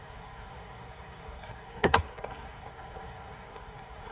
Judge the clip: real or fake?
fake